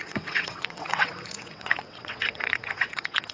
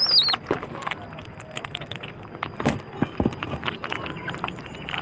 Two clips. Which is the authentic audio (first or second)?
second